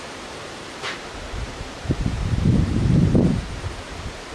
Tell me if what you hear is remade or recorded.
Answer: remade